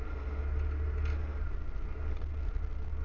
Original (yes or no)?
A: yes